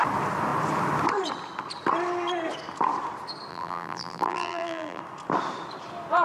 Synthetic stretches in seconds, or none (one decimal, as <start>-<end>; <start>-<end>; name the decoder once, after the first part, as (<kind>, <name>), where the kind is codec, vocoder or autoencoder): 3.5-5.0 (vocoder, BigVGAN v2)